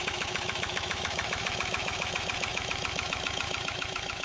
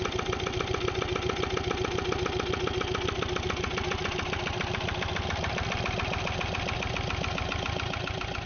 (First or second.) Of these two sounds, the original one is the second